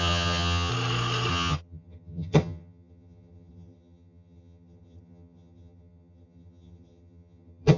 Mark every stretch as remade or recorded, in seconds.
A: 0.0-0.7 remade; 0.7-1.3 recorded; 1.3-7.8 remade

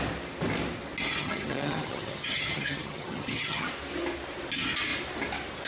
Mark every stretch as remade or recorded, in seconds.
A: 0.0-1.2 recorded; 1.2-3.7 remade; 3.7-5.7 recorded

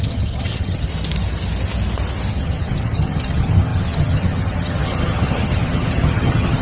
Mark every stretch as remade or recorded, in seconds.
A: 0.0-0.9 remade; 0.9-2.3 recorded; 2.3-6.6 remade

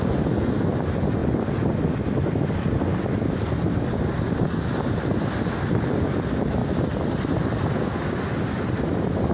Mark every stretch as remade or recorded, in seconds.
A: 0.0-9.3 recorded